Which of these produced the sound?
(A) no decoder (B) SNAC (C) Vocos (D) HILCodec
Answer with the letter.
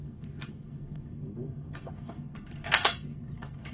B